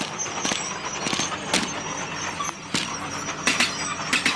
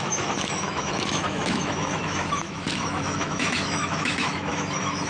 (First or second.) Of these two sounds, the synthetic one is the second